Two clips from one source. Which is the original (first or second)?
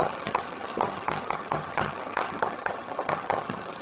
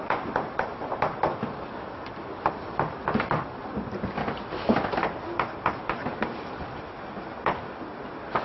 second